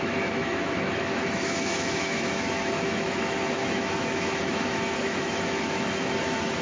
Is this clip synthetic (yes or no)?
yes